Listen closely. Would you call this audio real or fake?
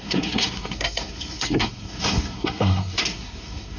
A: fake